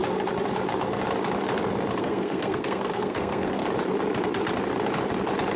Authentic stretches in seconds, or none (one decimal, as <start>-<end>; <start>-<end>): 0.0-2.0; 3.6-5.6